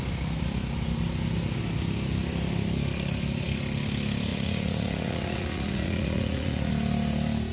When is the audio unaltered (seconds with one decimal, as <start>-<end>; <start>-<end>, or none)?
0.0-4.3; 6.7-7.5